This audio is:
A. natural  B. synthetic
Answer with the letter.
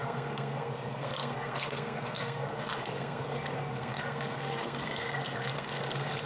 B